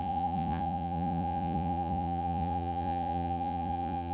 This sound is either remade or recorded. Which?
remade